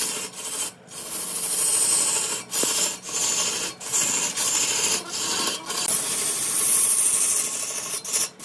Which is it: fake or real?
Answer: real